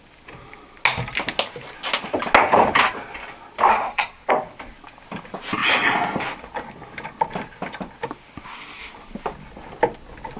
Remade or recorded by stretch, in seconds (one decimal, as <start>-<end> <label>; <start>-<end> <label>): 0.0-3.7 recorded; 3.7-4.3 remade; 4.3-10.4 recorded